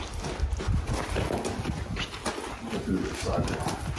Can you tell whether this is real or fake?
real